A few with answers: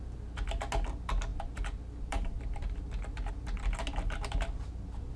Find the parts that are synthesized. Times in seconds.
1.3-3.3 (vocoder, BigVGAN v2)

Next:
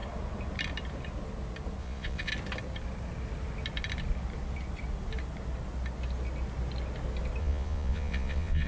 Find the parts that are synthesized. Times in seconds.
1.8-2.3 (vocoder, Vocos); 7.4-8.7

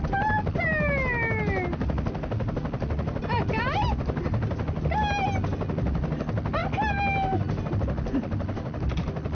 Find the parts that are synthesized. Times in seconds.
none

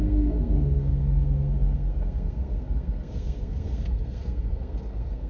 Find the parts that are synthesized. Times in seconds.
0.0-5.3 (codec, SNAC)

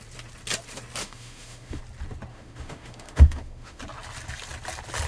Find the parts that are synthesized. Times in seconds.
1.0-1.8 (autoencoder, DAC-VAE); 2.3-3.8

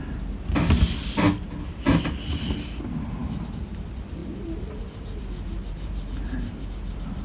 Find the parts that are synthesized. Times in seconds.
none

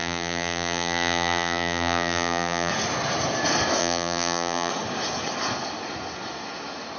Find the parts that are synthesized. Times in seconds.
0.0-2.7 (vocoder, BigVGAN v2); 3.8-4.7

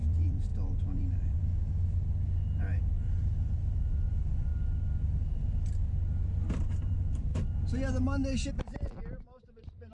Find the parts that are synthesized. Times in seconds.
0.0-0.5 (vocoder, BigVGAN v2); 2.8-4.5; 6.5-7.3; 8.5-9.9